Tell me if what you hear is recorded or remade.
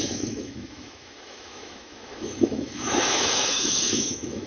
remade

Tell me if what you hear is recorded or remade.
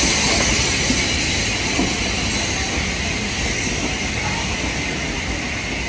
recorded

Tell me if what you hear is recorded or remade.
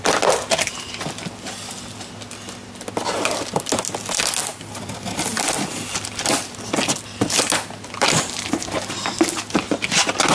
recorded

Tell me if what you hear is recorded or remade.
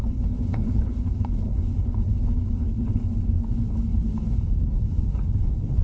remade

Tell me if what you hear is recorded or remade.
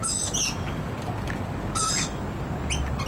recorded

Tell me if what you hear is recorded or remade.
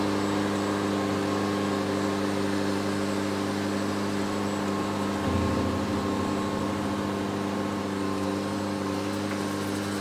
recorded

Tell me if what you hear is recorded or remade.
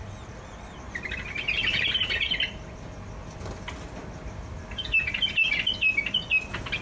recorded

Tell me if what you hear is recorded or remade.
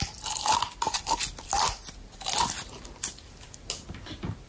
recorded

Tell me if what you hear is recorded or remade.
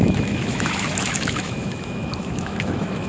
remade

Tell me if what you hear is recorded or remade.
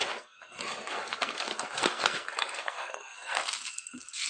remade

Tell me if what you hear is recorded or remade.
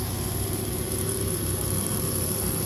remade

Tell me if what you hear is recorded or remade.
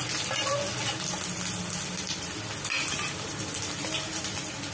recorded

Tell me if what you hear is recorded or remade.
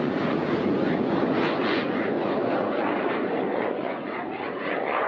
remade